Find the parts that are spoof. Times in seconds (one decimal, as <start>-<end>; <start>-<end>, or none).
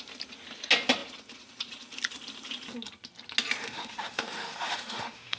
3.6-5.4